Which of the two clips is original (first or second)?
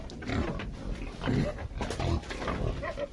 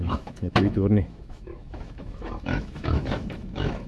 first